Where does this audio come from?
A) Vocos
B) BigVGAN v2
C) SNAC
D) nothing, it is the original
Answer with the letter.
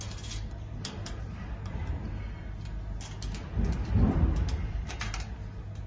D